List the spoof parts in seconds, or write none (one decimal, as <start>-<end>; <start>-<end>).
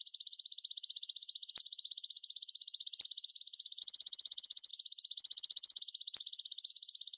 3.8-4.7; 5.2-5.8